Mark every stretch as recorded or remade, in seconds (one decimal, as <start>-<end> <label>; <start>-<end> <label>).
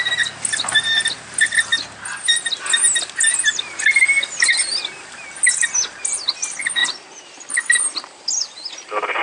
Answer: 0.0-6.8 recorded; 6.8-7.8 remade; 7.8-9.2 recorded